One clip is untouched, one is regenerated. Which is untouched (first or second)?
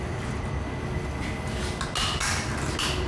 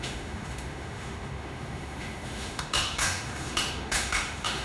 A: first